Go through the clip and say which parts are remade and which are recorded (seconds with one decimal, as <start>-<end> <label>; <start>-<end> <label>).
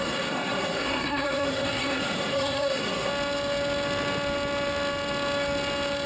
0.0-3.1 remade; 3.1-6.1 recorded